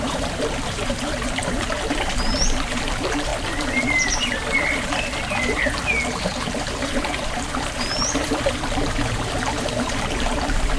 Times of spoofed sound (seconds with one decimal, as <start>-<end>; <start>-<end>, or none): 0.0-3.3; 6.2-10.8